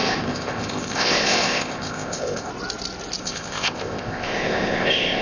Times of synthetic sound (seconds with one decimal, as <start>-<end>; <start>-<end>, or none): 0.0-2.5; 3.2-5.2